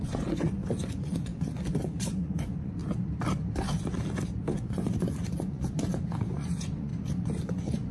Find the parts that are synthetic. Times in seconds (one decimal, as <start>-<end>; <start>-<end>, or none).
0.0-2.8; 4.6-6.9; 7.4-7.9